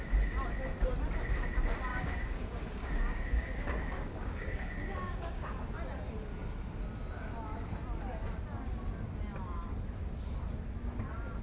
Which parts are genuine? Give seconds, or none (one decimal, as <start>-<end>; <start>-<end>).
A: 0.0-1.9; 5.5-11.4

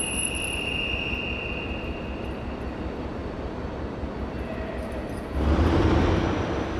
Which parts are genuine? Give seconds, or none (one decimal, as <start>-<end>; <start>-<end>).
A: 0.0-6.8